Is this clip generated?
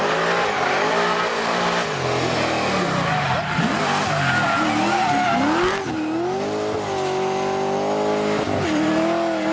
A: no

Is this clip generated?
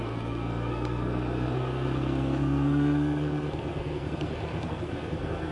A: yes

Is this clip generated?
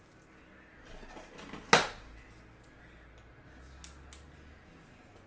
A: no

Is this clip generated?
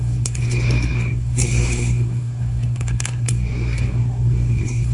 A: yes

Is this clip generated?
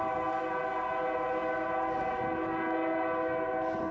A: no